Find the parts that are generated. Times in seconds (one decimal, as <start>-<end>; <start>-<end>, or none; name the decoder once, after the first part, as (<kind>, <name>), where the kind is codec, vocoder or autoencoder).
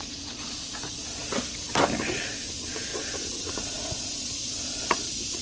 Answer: 0.0-1.2 (vocoder, Vocos); 2.2-5.4